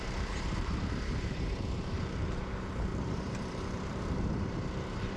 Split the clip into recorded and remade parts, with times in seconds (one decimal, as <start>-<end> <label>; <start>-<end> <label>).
0.0-5.2 remade